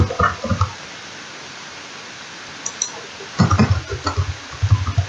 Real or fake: real